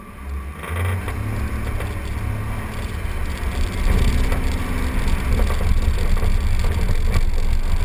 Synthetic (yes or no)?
no